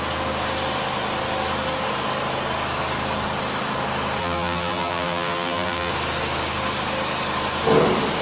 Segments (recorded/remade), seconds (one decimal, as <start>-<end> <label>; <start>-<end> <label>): 0.0-4.2 recorded; 4.2-5.9 remade; 5.9-8.2 recorded